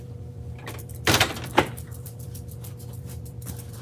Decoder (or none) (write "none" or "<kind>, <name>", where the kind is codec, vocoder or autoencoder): vocoder, BigVGAN v2